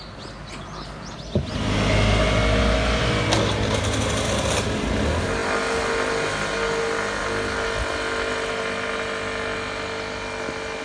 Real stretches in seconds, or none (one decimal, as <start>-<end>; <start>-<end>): 0.0-10.8